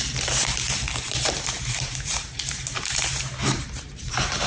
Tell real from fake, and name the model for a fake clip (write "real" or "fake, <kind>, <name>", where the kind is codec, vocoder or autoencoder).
fake, vocoder, BigVGAN v2